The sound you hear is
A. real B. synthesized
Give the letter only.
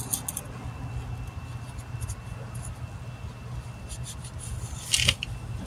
A